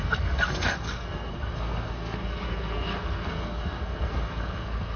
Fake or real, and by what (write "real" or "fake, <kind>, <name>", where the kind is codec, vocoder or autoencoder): fake, codec, SNAC